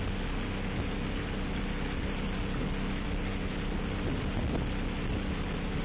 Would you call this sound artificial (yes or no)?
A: no